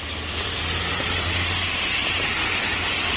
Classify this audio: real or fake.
fake